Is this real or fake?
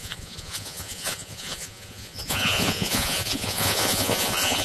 fake